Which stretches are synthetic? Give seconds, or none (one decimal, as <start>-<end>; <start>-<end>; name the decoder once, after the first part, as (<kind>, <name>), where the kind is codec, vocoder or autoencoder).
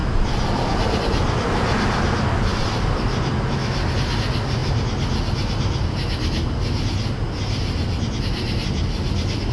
none